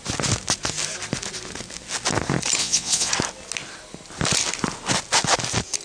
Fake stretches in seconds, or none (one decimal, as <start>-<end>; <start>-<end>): 2.6-3.1